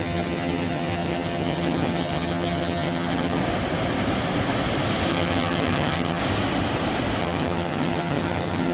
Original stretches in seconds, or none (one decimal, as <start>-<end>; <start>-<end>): 3.4-5.1; 6.2-7.2